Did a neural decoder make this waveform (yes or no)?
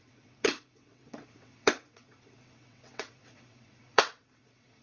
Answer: yes